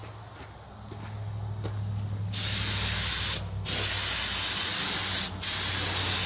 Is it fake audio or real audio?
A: real